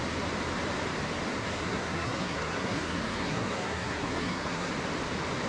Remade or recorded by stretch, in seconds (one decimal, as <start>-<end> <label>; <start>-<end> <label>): 0.0-1.4 recorded; 1.4-4.7 remade; 4.7-5.5 recorded